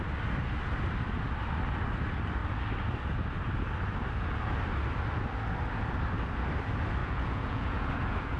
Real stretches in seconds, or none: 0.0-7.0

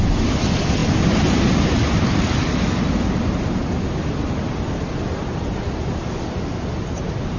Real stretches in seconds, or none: 0.0-7.4